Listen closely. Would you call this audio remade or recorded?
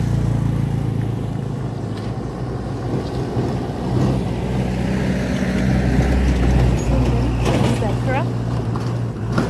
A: recorded